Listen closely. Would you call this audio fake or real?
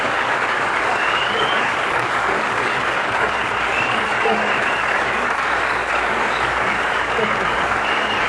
fake